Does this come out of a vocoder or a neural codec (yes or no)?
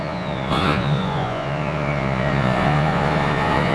yes